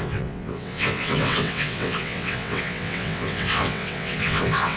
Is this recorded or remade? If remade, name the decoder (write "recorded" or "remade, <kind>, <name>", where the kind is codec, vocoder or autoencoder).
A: remade, vocoder, WaveNeXt